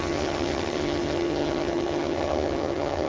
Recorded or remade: remade